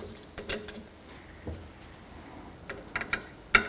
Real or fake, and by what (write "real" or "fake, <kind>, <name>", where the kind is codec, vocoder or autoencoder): real